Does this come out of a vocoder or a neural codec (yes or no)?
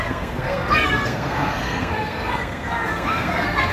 yes